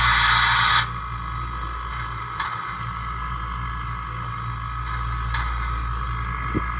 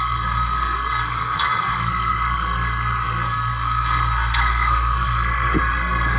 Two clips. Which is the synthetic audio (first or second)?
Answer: second